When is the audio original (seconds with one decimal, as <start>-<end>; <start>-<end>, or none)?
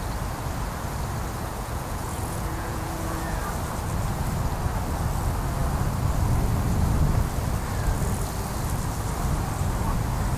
0.0-1.5; 3.4-10.4